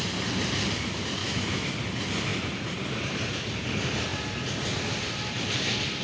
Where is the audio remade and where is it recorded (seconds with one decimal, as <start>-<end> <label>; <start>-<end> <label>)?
0.0-1.2 recorded; 1.2-1.7 remade; 1.7-6.0 recorded